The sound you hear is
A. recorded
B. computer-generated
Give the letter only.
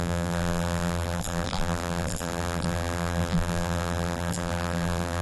B